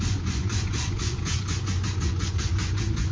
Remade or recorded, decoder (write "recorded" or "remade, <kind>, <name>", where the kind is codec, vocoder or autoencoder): remade, vocoder, Vocos